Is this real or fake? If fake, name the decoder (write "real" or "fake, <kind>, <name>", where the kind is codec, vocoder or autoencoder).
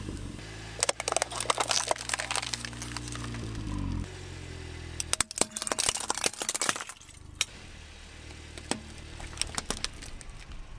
real